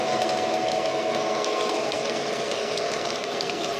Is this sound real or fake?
fake